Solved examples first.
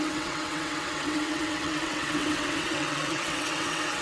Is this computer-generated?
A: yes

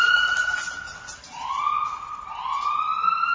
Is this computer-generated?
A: no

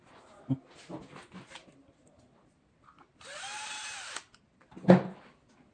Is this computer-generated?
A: no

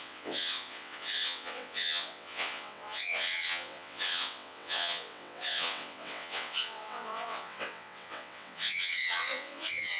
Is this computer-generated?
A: yes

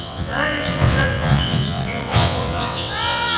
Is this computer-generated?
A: yes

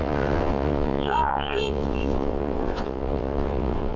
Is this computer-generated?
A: yes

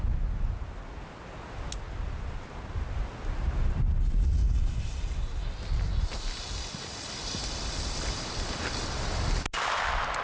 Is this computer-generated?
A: no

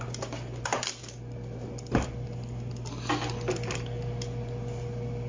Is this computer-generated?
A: no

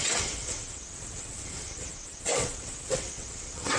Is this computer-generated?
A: yes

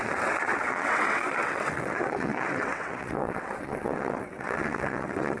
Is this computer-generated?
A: yes